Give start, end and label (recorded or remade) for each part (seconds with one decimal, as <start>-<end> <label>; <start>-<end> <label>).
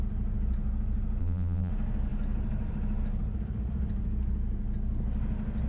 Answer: 0.0-1.2 recorded; 1.2-1.7 remade; 1.7-5.7 recorded